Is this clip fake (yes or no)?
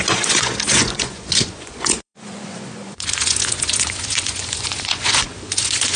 yes